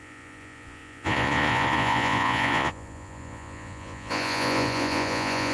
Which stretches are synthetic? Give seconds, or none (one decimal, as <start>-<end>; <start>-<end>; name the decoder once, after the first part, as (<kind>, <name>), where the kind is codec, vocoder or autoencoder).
0.0-5.5 (vocoder, Vocos)